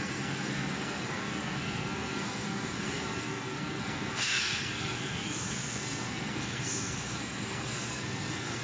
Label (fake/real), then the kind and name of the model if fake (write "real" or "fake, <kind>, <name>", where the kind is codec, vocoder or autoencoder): fake, codec, SNAC